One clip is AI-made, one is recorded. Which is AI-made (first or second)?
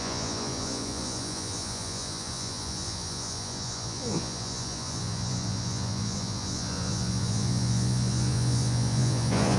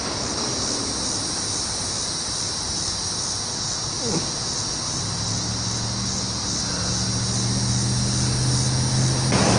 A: first